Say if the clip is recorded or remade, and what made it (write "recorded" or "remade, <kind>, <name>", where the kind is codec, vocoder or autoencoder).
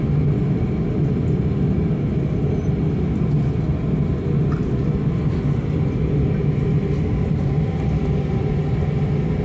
recorded